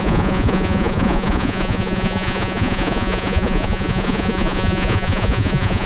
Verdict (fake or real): fake